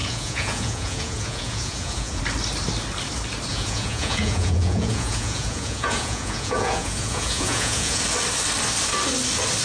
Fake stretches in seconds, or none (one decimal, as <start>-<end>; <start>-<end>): 0.0-2.2; 3.5-8.0